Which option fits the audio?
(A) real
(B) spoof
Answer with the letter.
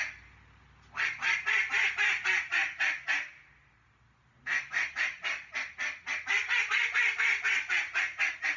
A